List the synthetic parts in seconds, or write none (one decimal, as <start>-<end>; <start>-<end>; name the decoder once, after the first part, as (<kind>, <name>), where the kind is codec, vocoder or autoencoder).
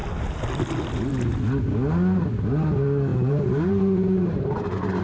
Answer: 3.1-5.0 (vocoder, BigVGAN v2)